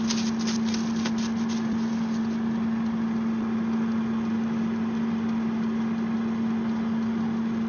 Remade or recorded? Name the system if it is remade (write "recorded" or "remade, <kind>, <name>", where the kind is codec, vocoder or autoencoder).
recorded